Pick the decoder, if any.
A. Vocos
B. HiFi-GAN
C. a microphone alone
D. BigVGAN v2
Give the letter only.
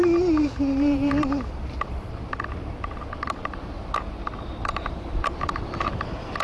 D